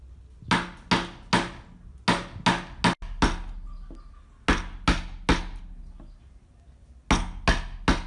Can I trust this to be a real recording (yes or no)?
yes